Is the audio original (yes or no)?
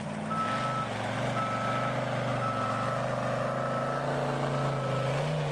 yes